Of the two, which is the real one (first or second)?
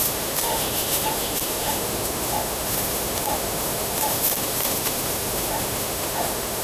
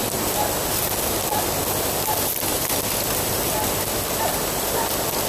second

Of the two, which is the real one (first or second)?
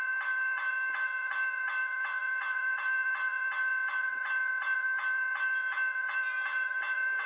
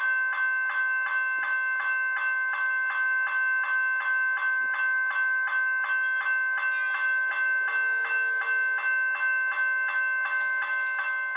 second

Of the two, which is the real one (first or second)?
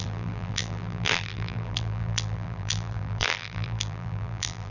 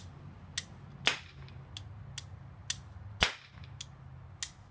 second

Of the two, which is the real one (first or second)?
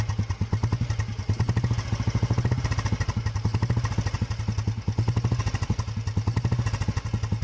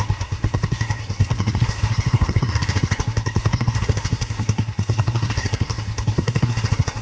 first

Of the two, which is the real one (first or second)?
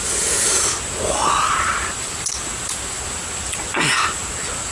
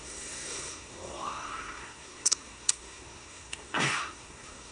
first